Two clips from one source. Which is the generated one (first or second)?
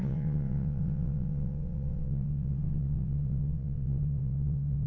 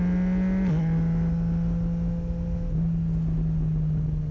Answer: first